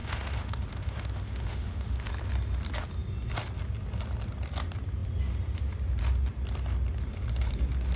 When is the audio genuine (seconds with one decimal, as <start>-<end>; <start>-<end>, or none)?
2.1-8.0